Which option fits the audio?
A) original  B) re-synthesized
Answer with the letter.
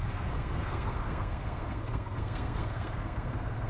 B